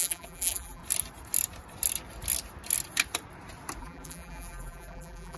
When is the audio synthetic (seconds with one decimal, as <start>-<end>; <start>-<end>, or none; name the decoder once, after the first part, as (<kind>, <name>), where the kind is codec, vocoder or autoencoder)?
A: 0.0-0.8 (vocoder, BigVGAN v2); 3.8-5.4